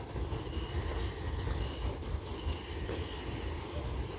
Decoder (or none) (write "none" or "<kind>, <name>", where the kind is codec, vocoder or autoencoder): none